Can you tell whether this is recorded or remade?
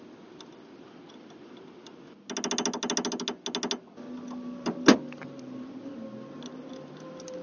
recorded